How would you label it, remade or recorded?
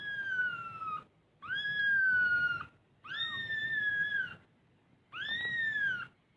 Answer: recorded